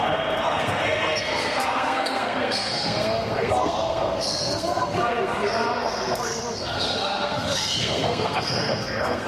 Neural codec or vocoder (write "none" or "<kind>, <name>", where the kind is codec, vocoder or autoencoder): codec, SNAC